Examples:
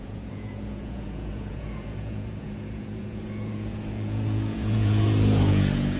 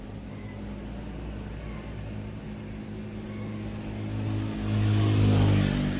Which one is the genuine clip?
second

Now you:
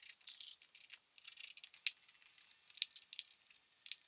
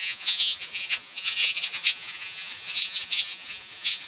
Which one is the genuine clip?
first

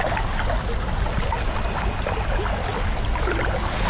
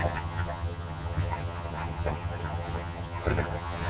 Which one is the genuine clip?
first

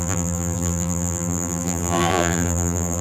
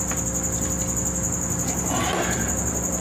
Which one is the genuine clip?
second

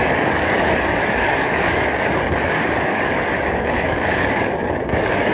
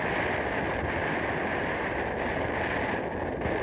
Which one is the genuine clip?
second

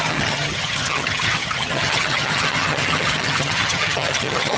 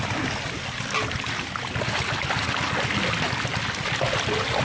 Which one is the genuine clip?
second